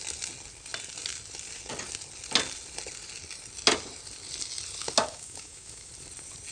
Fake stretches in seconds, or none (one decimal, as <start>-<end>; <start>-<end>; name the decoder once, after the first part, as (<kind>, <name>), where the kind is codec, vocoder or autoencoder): 5.1-5.9 (autoencoder, DAC-VAE)